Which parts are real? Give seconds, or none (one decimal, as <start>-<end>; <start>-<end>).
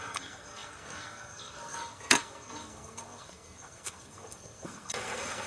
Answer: none